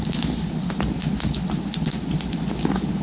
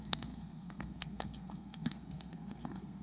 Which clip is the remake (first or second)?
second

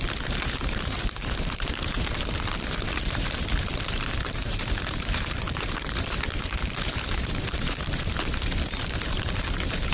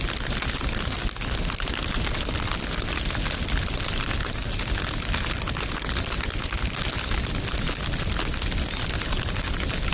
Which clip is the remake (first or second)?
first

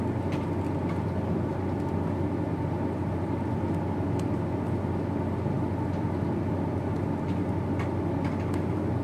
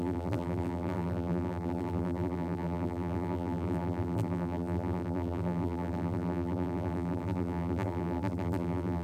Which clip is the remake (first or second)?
second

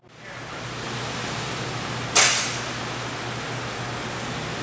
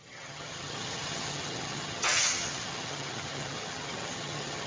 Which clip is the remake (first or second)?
second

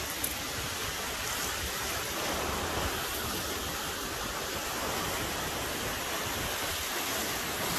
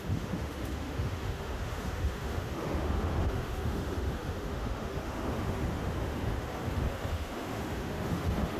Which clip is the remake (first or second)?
second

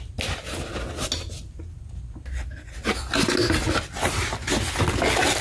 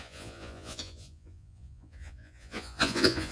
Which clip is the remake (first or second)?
second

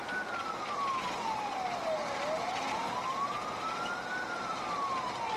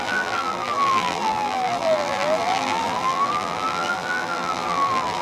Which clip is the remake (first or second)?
second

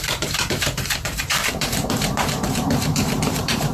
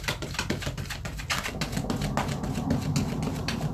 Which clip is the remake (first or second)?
first